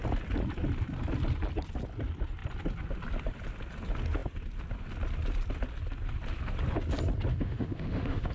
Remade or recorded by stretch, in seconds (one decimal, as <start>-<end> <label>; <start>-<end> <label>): 0.0-7.3 recorded; 7.3-8.3 remade

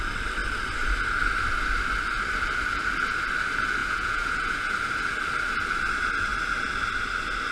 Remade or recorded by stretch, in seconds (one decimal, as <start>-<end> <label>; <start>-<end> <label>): 0.0-3.8 recorded; 3.8-4.7 remade; 4.7-7.5 recorded